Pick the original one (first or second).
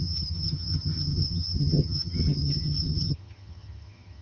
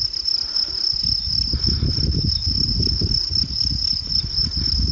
second